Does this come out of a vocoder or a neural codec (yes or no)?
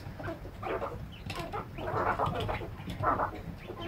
yes